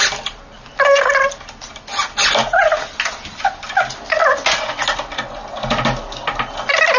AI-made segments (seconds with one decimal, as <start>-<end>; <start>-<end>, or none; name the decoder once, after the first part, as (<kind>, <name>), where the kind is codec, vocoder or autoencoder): 0.0-4.2 (vocoder, BigVGAN v2); 4.7-7.0